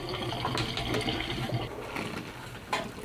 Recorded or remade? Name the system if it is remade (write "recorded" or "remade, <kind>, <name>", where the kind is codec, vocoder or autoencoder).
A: recorded